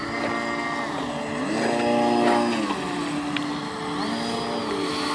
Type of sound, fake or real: real